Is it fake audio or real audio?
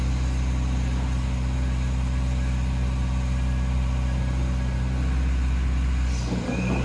real